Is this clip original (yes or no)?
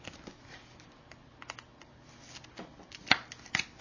yes